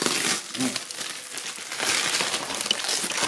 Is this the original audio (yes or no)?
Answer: yes